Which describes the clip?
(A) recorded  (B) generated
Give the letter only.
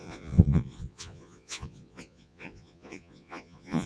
B